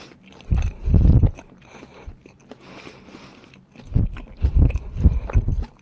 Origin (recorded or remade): recorded